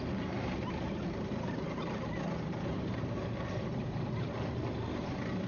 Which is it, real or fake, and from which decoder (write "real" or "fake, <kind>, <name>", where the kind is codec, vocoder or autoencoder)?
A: fake, vocoder, BigVGAN v2